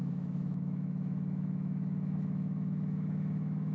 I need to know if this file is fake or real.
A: fake